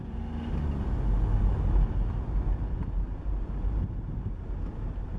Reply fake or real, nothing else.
real